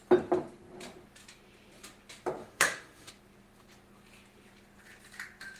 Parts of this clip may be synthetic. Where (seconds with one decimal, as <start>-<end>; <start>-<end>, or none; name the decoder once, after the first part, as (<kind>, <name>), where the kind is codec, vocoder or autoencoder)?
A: 2.4-3.1 (autoencoder, DAC-VAE)